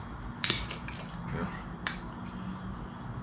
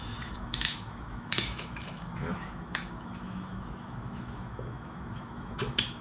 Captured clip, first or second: first